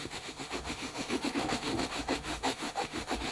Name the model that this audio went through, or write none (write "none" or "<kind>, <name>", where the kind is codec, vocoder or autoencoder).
autoencoder, DAC-VAE